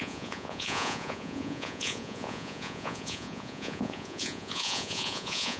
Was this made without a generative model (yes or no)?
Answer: no